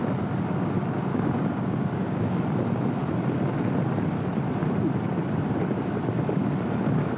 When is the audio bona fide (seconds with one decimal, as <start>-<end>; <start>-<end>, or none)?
0.0-1.1; 2.4-7.2